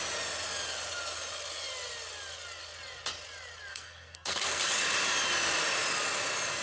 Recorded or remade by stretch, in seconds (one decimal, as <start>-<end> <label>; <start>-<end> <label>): 0.0-3.7 recorded; 3.7-4.6 remade; 4.6-6.6 recorded